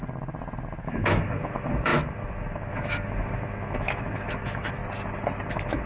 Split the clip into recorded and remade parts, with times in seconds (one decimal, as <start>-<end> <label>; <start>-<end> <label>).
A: 0.0-0.8 recorded; 0.8-4.8 remade; 4.8-5.5 recorded; 5.5-5.9 remade